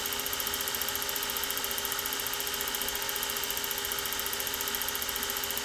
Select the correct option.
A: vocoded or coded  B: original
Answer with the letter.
B